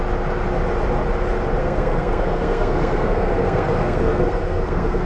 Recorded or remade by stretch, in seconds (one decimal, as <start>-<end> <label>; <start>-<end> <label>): 0.0-1.6 recorded; 1.6-5.1 remade